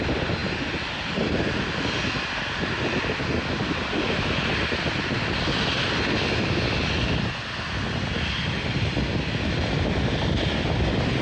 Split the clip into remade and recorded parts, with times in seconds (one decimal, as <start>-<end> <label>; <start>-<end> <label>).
0.0-11.2 recorded